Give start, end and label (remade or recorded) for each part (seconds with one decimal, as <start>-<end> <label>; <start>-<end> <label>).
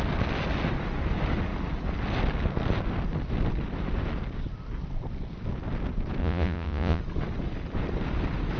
0.0-6.2 recorded; 6.2-7.0 remade; 7.0-8.6 recorded